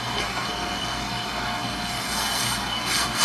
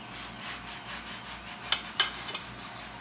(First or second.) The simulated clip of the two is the first